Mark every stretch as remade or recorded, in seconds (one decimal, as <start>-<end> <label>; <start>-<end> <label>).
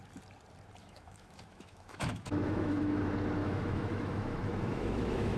0.0-0.8 recorded; 0.8-3.0 remade; 3.0-3.4 recorded; 3.4-5.4 remade